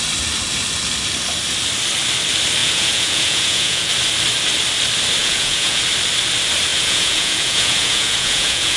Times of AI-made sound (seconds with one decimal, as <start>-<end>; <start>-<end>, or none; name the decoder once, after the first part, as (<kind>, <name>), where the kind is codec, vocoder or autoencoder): 2.6-3.9 (vocoder, Vocos); 5.2-5.8; 6.7-8.8